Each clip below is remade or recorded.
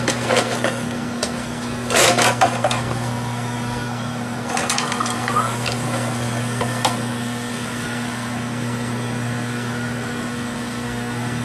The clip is remade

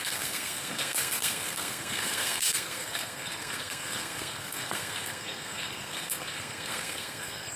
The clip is remade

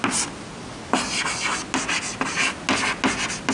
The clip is recorded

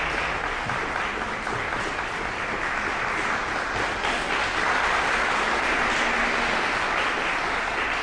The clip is recorded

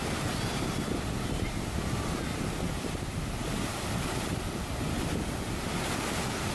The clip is recorded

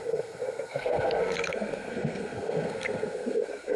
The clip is remade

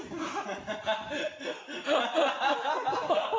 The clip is recorded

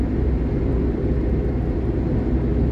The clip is recorded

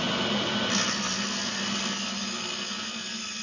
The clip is recorded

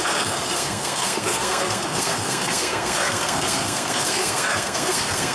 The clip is remade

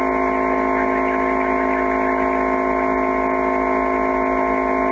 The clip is recorded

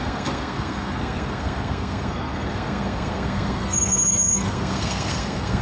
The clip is remade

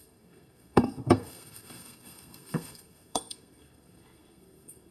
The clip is remade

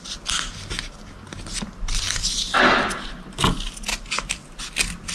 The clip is recorded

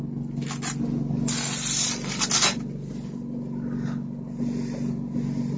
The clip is recorded